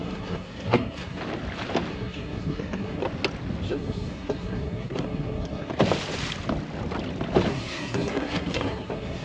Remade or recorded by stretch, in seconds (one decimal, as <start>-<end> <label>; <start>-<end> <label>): 0.0-1.2 remade; 1.2-1.9 recorded; 1.9-3.0 remade; 3.0-3.7 recorded; 3.7-5.7 remade; 5.7-7.5 recorded; 7.5-9.2 remade